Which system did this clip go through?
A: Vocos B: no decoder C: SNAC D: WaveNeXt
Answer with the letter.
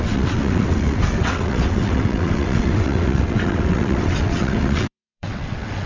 D